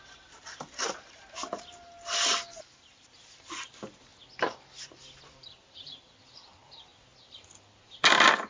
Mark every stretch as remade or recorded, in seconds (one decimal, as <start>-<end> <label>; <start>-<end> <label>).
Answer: 0.0-1.4 remade; 1.4-2.6 recorded; 2.6-4.1 remade; 4.1-4.8 recorded; 4.8-6.9 remade; 6.9-8.5 recorded